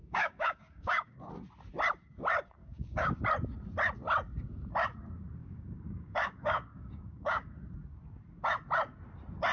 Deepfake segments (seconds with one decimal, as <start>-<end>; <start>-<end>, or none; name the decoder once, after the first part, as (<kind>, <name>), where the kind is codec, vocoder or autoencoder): 0.0-1.3 (codec, DAC); 2.6-3.2; 5.4-7.5

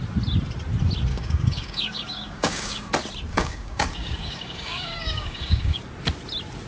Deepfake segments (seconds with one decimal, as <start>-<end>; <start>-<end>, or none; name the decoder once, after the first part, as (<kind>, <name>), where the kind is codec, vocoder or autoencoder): 1.1-2.9 (codec, DAC); 3.3-5.8

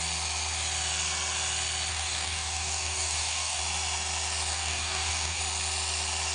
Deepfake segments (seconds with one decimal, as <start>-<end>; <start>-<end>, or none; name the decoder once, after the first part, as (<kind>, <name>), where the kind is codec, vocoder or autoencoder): 1.9-3.6 (codec, DAC); 4.5-5.4

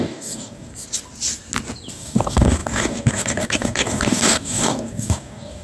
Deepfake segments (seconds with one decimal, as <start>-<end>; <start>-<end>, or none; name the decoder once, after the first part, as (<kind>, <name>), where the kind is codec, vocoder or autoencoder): 0.0-0.7 (codec, DAC); 1.9-5.6